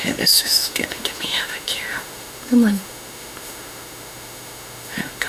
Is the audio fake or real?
fake